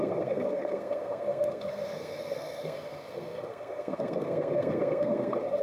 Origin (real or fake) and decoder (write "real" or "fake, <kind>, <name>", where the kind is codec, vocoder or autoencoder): fake, codec, SNAC